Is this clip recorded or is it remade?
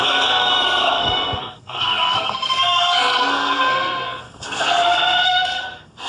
remade